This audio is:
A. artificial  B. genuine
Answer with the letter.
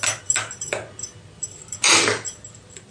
B